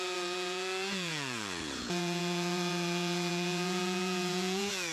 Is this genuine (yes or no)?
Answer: no